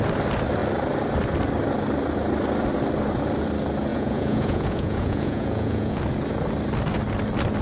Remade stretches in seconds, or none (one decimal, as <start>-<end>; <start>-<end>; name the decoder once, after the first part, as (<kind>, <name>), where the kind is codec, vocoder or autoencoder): 3.9-6.0 (vocoder, Vocos)